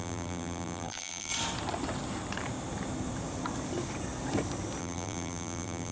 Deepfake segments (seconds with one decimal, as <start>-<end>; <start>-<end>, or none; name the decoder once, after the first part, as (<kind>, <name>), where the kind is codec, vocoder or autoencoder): 0.0-1.3 (vocoder, BigVGAN v2); 4.8-5.9